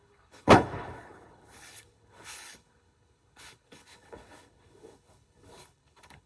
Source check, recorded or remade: remade